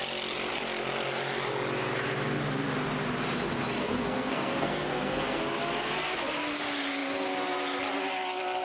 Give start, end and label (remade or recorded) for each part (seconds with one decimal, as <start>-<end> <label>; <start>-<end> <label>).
0.0-3.8 recorded; 3.8-5.4 remade; 5.4-8.6 recorded